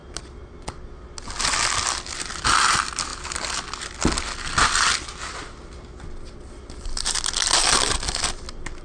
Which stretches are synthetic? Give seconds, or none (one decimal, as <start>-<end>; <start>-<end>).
none